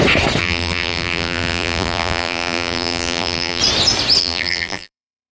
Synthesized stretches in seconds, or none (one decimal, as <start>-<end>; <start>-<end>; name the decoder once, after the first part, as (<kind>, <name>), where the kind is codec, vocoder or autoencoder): 0.4-3.6 (vocoder, BigVGAN v2); 4.2-5.3